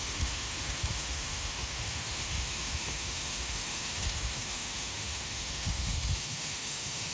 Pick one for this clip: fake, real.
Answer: fake